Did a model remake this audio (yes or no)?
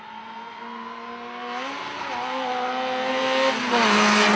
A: no